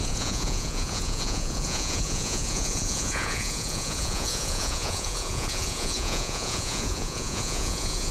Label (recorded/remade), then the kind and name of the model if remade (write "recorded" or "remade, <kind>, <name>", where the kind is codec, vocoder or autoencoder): remade, vocoder, Vocos